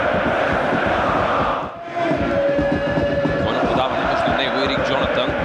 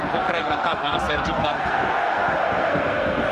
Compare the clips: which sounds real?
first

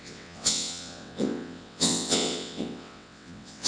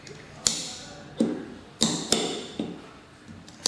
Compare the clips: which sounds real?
second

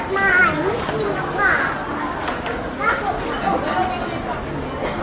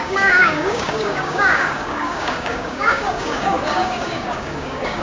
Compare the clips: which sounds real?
first